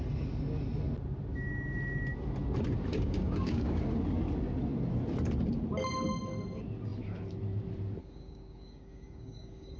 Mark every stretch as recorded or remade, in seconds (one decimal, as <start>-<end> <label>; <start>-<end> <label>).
0.0-2.9 recorded; 2.9-3.8 remade; 3.8-8.0 recorded; 8.0-9.8 remade